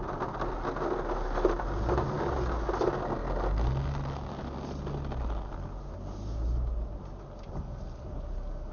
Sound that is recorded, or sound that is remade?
recorded